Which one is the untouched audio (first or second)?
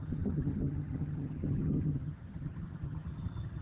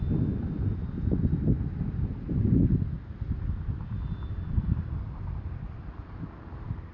second